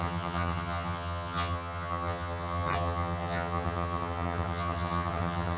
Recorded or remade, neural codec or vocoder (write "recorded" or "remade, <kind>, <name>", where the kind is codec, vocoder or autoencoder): remade, vocoder, HiFi-GAN